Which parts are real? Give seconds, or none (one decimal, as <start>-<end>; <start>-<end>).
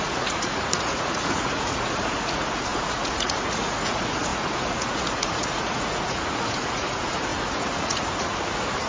none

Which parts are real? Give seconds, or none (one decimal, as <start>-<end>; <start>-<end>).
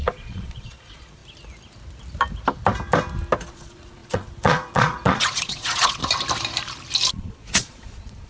1.2-3.5; 6.0-7.1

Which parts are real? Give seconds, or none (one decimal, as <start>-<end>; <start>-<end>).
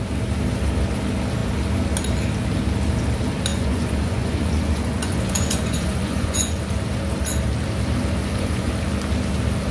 0.0-3.5; 6.6-8.2; 8.7-9.7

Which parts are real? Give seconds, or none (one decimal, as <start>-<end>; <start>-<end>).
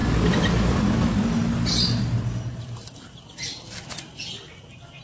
0.0-5.0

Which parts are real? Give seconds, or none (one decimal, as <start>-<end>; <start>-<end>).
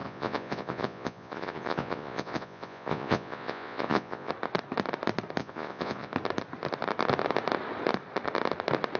4.3-5.4; 6.1-9.0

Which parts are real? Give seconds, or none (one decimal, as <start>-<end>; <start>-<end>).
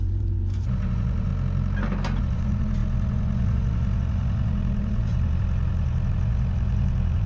1.3-2.2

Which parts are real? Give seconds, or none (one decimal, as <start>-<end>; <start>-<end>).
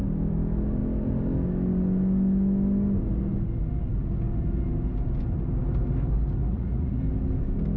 0.0-6.4; 7.0-7.8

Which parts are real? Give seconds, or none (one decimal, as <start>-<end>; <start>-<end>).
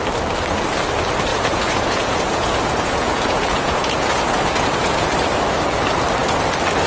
0.0-1.3; 5.1-6.9